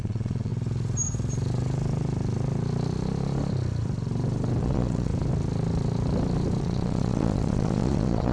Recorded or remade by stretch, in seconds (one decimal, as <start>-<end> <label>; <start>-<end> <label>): 0.0-0.5 remade; 0.5-4.6 recorded; 4.6-5.1 remade; 5.1-6.6 recorded; 6.6-8.3 remade